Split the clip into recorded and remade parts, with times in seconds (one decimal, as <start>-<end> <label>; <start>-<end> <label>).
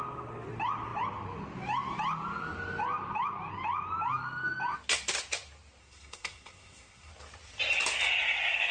0.0-5.8 recorded; 5.8-7.1 remade; 7.1-8.7 recorded